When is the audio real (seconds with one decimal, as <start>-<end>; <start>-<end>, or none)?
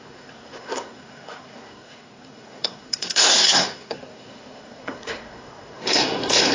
none